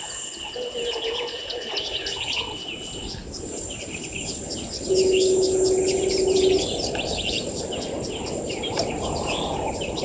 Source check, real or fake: real